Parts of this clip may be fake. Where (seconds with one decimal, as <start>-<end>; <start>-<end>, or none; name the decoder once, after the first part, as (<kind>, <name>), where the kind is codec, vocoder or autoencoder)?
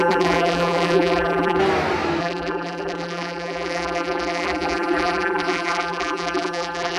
0.0-1.6 (vocoder, BigVGAN v2); 2.2-7.0